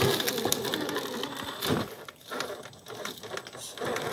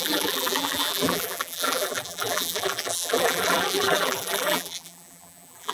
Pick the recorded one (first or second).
first